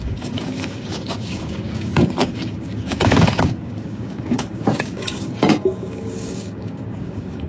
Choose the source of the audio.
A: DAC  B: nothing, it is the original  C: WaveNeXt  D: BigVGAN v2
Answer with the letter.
A